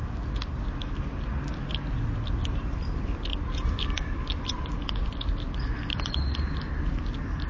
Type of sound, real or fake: real